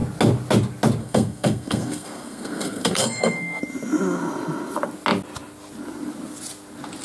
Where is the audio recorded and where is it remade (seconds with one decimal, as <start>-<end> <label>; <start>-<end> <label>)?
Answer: 0.0-1.0 recorded; 1.0-3.6 remade; 3.6-7.0 recorded